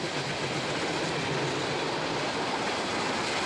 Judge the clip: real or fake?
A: real